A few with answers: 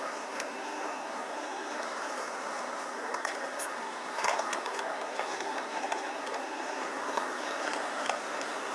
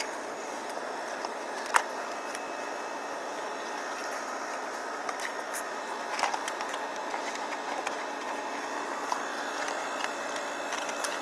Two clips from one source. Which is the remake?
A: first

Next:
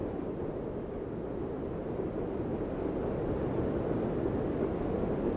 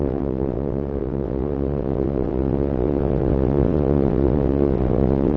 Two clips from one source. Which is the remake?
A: second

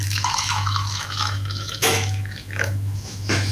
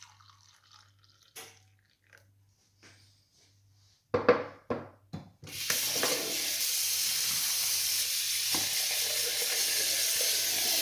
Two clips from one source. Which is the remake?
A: first